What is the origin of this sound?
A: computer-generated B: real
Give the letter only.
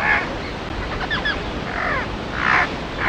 B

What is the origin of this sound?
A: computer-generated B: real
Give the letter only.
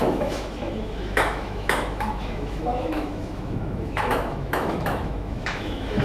A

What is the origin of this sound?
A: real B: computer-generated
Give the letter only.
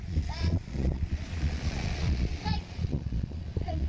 B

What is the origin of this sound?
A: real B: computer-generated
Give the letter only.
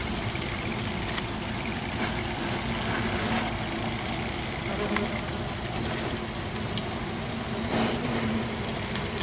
A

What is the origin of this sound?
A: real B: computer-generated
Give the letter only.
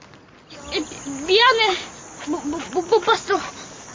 A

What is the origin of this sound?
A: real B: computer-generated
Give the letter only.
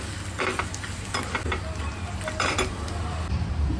A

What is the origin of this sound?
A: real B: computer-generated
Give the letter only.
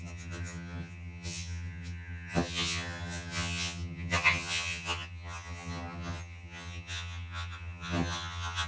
B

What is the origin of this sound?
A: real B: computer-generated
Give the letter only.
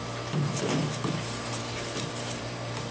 B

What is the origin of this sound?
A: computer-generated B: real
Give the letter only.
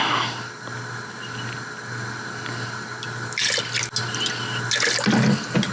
B